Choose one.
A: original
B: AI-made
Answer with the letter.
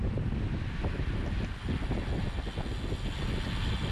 A